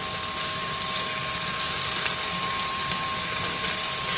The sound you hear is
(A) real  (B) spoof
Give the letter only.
A